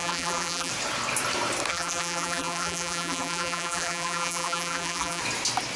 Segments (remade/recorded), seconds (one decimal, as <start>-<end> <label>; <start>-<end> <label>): 0.0-0.7 remade; 0.7-1.7 recorded; 1.7-5.2 remade; 5.2-5.8 recorded